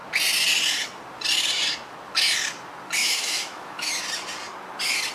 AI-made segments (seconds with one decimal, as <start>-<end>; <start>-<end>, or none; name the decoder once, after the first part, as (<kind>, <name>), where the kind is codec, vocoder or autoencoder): 3.0-4.0 (autoencoder, DAC-VAE)